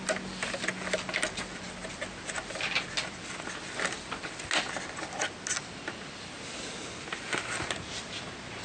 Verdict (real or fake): real